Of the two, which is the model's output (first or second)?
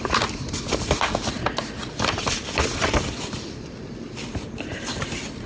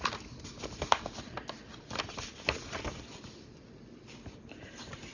first